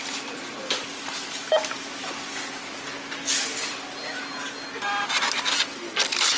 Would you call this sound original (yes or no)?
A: yes